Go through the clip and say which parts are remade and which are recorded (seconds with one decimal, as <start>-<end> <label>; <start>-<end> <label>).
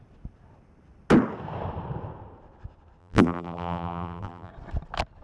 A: 0.0-3.0 recorded; 3.0-4.5 remade; 4.5-5.2 recorded